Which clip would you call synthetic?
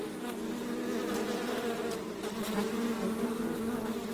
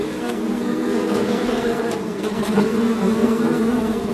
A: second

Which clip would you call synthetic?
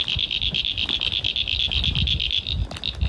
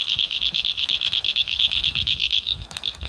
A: second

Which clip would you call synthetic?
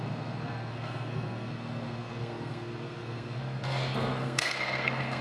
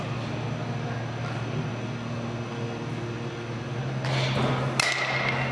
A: first